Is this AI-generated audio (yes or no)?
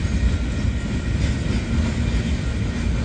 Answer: no